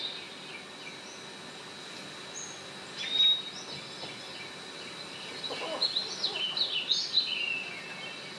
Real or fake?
real